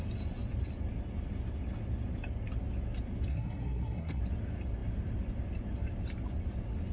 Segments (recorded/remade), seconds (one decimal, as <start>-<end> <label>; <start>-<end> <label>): 0.0-3.3 recorded; 3.3-4.2 remade; 4.2-6.9 recorded